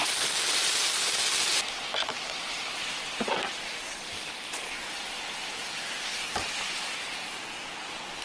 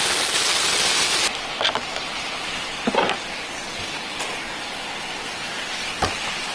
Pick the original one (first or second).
second